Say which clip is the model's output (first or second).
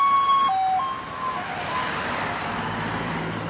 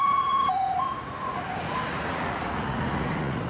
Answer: second